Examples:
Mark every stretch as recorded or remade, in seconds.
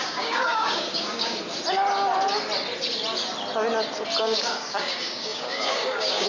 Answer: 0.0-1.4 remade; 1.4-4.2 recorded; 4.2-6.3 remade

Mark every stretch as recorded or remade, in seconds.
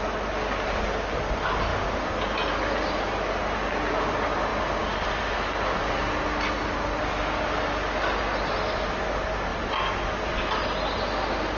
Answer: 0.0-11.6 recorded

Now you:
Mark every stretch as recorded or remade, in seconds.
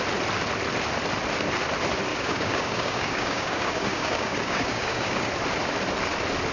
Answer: 0.0-2.1 recorded; 2.1-5.3 remade; 5.3-6.5 recorded